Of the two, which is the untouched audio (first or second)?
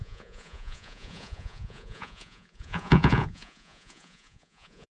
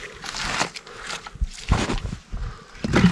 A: second